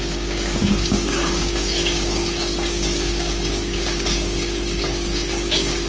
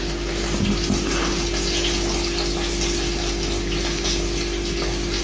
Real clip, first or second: second